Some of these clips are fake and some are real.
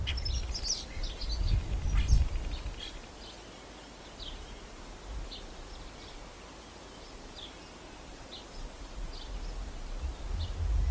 real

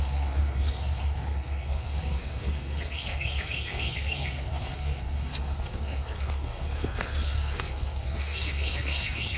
fake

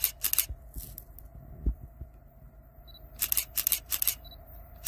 real